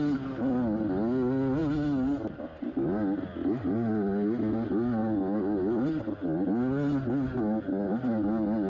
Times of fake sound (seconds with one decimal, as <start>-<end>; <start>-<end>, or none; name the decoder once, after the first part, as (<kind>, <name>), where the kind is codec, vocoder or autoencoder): none